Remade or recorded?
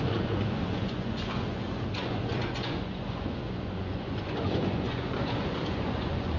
remade